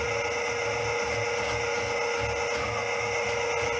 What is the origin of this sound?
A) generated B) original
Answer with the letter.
B